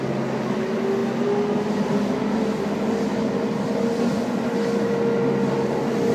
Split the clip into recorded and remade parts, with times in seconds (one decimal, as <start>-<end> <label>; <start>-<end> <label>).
0.0-6.1 recorded